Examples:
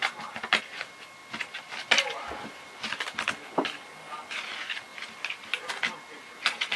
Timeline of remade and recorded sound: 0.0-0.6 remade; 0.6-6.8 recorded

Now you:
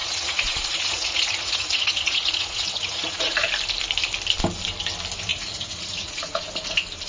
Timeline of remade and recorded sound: 0.0-3.5 remade; 3.5-5.3 recorded; 5.3-6.5 remade; 6.5-7.1 recorded